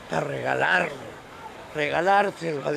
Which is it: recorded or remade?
remade